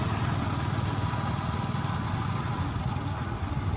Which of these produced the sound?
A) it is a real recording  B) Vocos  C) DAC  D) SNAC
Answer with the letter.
A